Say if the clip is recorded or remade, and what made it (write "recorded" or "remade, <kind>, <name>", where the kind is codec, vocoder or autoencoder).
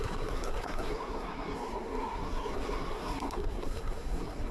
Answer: remade, codec, SNAC